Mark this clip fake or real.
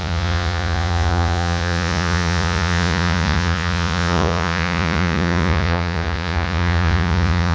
fake